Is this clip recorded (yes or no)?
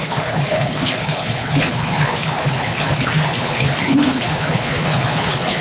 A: no